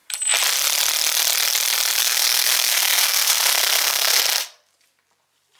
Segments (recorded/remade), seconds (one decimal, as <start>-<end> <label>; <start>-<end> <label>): 0.0-2.0 recorded; 2.0-4.2 remade; 4.2-5.6 recorded